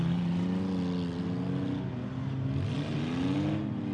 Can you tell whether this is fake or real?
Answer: real